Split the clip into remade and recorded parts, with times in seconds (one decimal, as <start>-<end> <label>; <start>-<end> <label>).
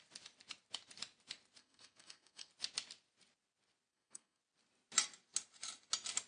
0.0-1.6 recorded; 1.6-2.5 remade; 2.5-3.9 recorded; 3.9-4.4 remade; 4.4-6.3 recorded